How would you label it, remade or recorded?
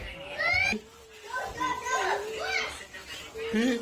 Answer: recorded